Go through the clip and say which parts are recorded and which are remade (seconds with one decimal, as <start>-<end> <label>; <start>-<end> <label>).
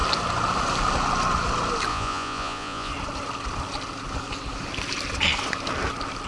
0.0-1.9 recorded; 1.9-2.9 remade; 2.9-6.3 recorded